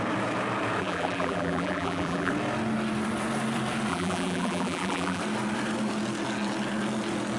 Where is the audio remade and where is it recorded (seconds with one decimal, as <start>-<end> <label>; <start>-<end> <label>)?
0.0-0.8 recorded; 0.8-2.3 remade; 2.3-3.9 recorded; 3.9-5.2 remade; 5.2-7.4 recorded